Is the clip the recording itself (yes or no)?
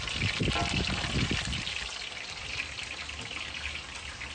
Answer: yes